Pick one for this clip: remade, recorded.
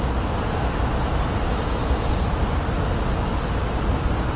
recorded